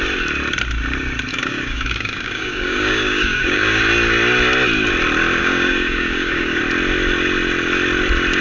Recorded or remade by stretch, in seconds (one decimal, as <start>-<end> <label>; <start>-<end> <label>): 0.0-1.3 recorded; 1.3-3.8 remade; 3.8-5.4 recorded; 5.4-6.6 remade; 6.6-8.4 recorded